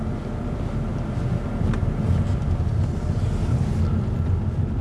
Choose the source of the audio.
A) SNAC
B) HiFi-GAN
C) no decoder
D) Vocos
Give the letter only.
C